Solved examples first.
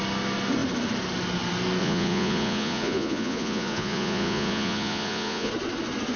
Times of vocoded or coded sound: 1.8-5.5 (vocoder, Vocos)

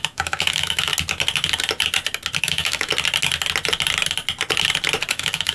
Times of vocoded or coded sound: 0.0-0.9 (autoencoder, DAC-VAE); 2.4-2.9; 5.1-5.5

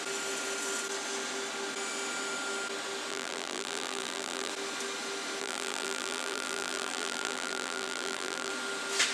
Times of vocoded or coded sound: 3.1-4.5 (vocoder, BigVGAN v2); 5.4-8.5

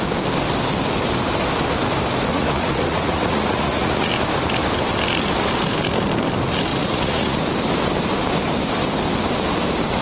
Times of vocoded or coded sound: 2.3-4.1 (vocoder, Vocos); 6.7-7.4

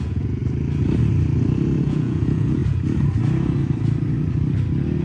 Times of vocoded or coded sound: 0.0-0.4 (vocoder, Vocos); 1.8-2.6